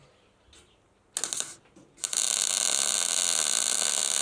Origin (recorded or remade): recorded